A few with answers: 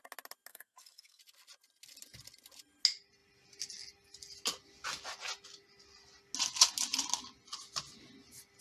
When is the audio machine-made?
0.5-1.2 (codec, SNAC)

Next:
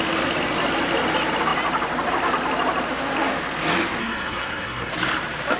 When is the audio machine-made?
4.0-4.9 (codec, SNAC)

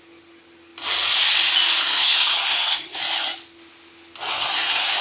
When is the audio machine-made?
1.8-3.0 (codec, SNAC); 4.3-5.0

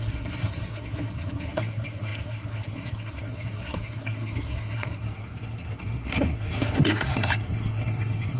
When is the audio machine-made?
0.0-8.4 (codec, SNAC)

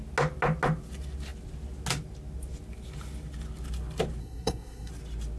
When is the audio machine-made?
4.2-4.9 (codec, SNAC)

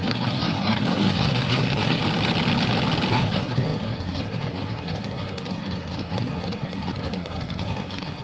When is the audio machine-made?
0.0-2.0 (codec, SNAC); 3.1-8.2

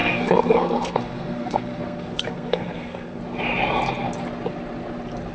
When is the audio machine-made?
0.0-3.2 (codec, SNAC)

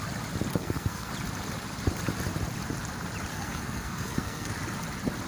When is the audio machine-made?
0.5-1.1 (codec, SNAC); 3.3-4.6